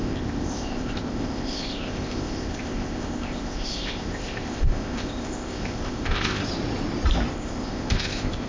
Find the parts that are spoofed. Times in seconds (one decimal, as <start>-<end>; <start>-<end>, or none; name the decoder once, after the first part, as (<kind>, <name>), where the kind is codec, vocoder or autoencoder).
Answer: 0.0-6.4 (codec, ZipCodec); 7.3-8.5